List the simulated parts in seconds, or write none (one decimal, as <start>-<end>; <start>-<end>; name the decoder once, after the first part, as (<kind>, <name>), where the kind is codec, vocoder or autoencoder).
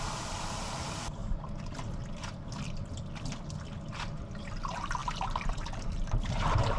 0.0-1.2 (vocoder, BigVGAN v2); 4.4-6.8